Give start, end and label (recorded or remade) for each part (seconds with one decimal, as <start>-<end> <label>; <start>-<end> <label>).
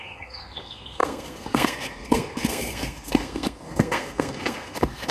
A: 0.0-5.1 remade